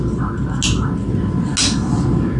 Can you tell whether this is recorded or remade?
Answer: recorded